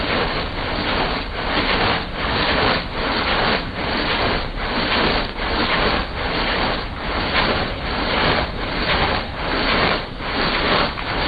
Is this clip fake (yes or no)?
no